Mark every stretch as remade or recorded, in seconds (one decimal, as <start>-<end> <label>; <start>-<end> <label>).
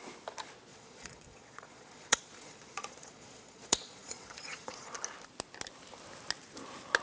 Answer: 0.0-0.7 recorded; 0.7-4.9 remade; 4.9-7.0 recorded